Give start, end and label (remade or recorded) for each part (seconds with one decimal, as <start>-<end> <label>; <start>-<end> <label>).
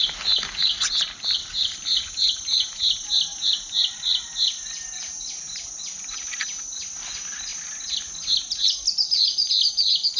0.0-10.2 recorded